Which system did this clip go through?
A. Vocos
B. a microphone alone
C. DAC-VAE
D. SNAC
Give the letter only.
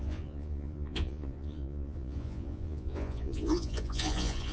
A